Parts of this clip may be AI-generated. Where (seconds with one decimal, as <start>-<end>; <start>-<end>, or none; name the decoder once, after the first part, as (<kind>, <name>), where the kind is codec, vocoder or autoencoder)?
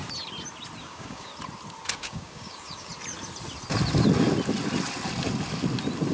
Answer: 0.8-1.3 (codec, DAC); 1.9-2.9